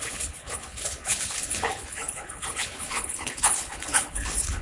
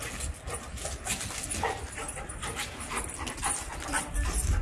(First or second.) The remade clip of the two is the first